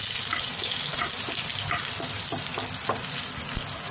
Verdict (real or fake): real